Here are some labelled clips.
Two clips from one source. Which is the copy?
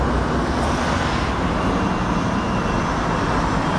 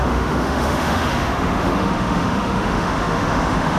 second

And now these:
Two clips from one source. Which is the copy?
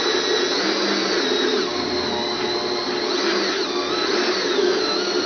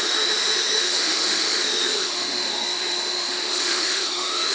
second